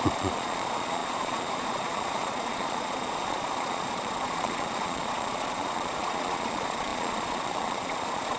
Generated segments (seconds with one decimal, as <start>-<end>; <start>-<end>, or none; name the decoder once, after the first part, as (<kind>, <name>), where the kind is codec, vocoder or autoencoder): 0.0-8.4 (vocoder, Vocos)